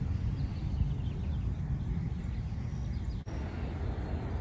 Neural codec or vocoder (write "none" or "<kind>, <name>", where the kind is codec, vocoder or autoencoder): none